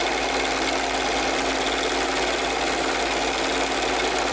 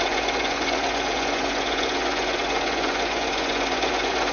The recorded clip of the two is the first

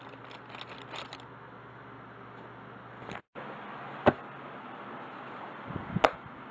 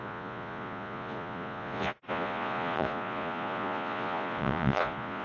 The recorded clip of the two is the first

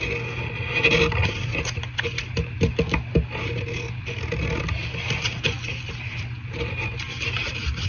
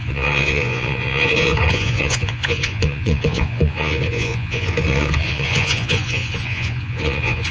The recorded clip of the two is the first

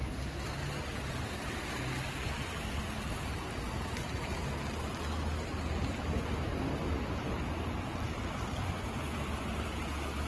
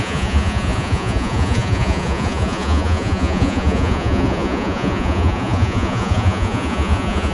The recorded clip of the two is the first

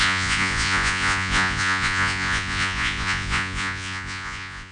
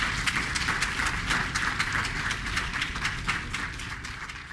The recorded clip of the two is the second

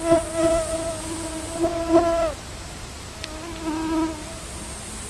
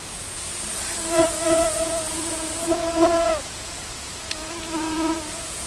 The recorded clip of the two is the first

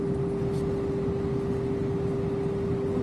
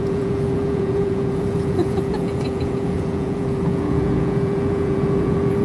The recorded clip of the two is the first